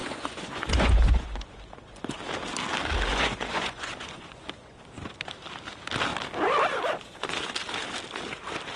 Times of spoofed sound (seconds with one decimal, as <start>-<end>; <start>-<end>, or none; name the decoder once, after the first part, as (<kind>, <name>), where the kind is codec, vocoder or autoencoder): 0.0-2.2 (vocoder, Vocos); 3.1-4.8